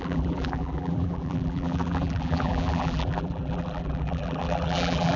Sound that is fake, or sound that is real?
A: fake